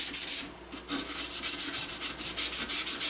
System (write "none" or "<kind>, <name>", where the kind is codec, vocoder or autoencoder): none